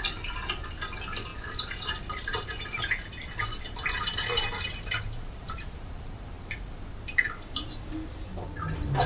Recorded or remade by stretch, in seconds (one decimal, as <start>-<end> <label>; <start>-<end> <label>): 0.0-1.3 recorded; 1.3-2.8 remade; 2.8-3.5 recorded; 3.5-6.9 remade; 6.9-9.1 recorded